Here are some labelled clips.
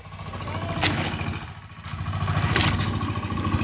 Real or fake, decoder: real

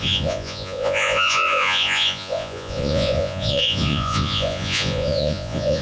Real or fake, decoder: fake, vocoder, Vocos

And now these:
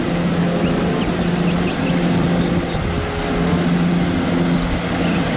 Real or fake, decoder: real